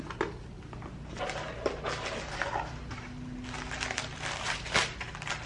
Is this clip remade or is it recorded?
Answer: recorded